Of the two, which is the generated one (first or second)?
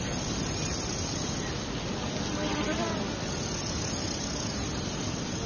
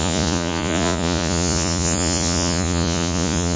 second